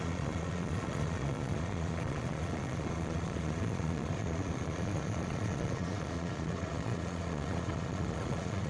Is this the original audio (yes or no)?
no